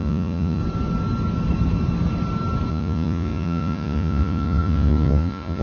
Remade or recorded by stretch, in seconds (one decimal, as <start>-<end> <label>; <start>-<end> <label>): 0.0-0.6 remade; 0.6-2.7 recorded; 2.7-5.6 remade